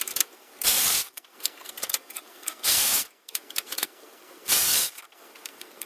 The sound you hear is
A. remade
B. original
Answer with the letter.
A